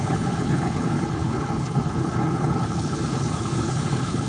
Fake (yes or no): yes